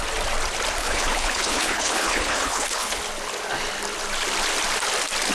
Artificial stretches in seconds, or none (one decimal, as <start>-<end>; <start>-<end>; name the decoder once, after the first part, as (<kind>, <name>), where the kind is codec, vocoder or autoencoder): 0.8-3.0 (codec, HILCodec)